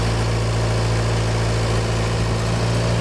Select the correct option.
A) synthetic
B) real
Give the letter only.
B